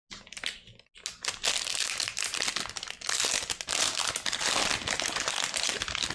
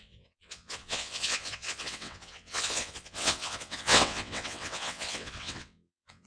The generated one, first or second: second